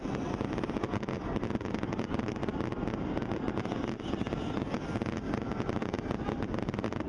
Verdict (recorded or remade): recorded